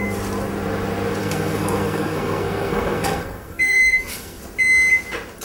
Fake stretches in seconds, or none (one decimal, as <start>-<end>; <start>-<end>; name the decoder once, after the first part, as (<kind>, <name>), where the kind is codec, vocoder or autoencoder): 1.2-4.4 (codec, SNAC)